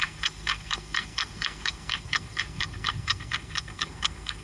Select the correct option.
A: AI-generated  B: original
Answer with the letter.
A